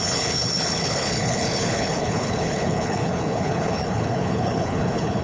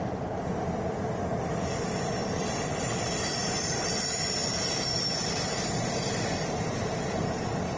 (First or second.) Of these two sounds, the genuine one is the second